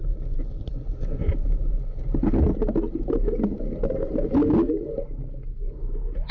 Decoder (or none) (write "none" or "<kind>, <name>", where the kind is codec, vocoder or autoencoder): none